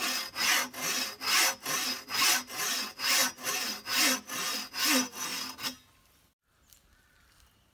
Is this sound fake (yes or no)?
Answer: no